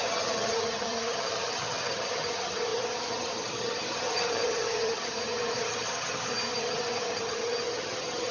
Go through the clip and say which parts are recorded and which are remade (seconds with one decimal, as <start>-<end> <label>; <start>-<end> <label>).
0.0-8.3 remade